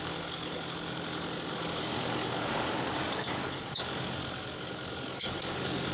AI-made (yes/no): yes